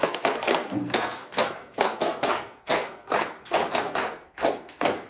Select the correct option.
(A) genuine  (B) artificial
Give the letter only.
B